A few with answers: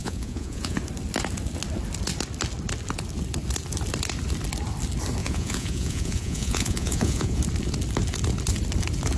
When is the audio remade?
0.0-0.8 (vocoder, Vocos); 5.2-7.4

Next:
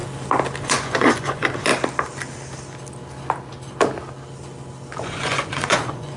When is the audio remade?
0.6-1.7 (vocoder, Vocos); 5.0-6.2

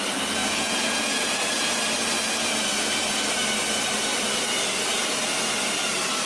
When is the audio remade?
0.4-1.8 (vocoder, Vocos); 2.7-3.2

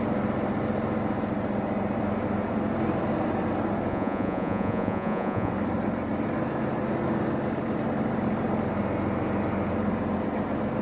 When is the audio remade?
3.9-5.5 (vocoder, Vocos)

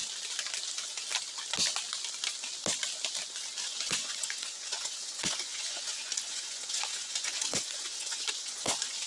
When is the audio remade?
3.6-9.1 (vocoder, Vocos)